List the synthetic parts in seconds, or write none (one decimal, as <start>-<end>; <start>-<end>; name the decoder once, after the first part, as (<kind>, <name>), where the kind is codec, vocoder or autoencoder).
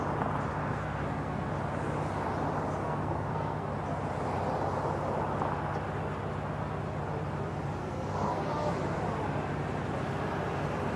0.5-1.5 (codec, SNAC); 2.8-3.7; 7.8-8.5